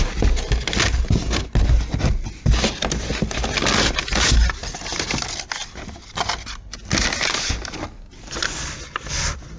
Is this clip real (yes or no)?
yes